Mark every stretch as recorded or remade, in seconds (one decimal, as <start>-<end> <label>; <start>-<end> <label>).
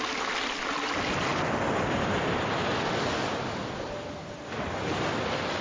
0.0-5.6 recorded